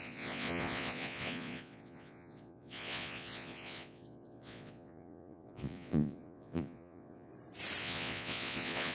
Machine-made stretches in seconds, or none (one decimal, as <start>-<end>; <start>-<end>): 0.0-7.3; 7.8-8.9